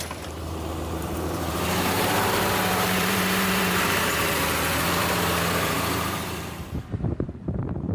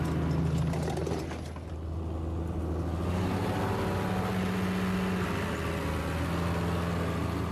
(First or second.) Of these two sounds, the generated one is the first